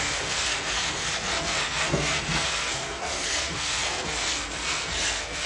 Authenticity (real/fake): fake